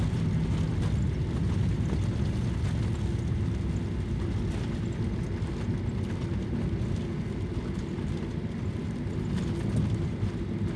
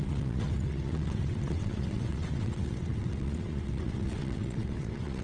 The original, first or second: first